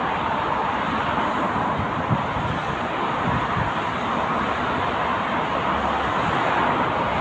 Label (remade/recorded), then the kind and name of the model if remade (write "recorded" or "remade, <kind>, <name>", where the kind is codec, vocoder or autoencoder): recorded